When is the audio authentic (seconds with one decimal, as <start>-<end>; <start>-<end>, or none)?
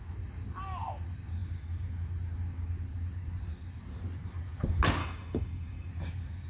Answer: 0.0-5.0; 5.9-6.5